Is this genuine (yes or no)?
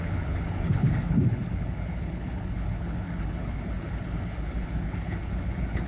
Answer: no